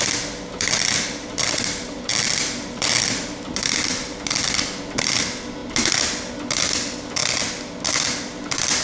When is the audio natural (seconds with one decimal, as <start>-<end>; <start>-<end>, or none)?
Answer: 5.6-6.3; 7.2-7.9